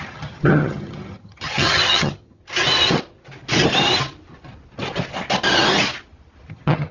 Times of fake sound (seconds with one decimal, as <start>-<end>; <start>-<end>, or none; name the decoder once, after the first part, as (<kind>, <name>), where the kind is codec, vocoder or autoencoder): 0.0-2.4 (vocoder, HiFi-GAN); 6.5-6.9